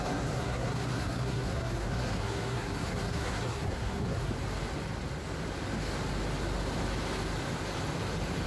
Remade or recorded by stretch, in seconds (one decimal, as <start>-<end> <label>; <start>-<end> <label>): 0.0-4.3 remade; 4.3-8.5 recorded